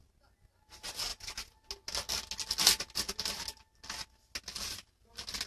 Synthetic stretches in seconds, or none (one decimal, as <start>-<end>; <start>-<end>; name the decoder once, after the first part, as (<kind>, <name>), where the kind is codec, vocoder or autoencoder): none